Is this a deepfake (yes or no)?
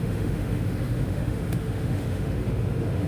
yes